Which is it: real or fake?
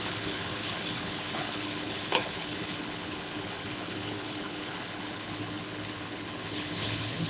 fake